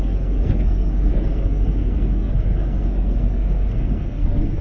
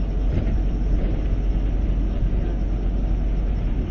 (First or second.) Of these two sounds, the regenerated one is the first